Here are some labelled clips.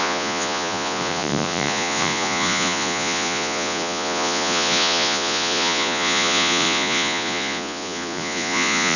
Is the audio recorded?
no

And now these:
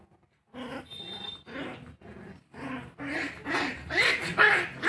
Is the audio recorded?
yes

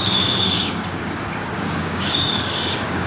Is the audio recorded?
no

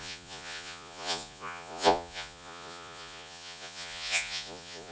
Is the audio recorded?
no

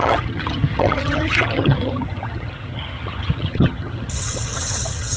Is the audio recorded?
no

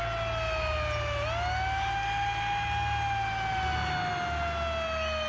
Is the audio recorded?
yes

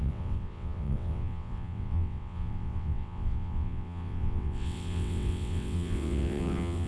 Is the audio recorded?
no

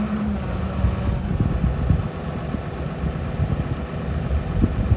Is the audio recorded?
yes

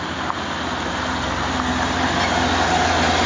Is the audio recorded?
yes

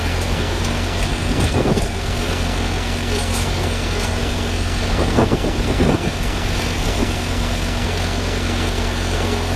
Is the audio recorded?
no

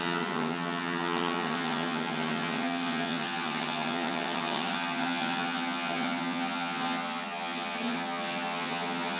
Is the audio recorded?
no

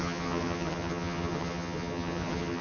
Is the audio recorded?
no